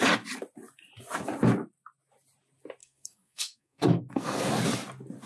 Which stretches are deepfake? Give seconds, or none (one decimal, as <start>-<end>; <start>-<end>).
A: 2.8-4.5